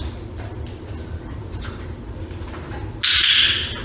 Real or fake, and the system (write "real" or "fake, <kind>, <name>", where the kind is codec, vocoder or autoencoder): real